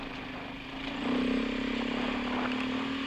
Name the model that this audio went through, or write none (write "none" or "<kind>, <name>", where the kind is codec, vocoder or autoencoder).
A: none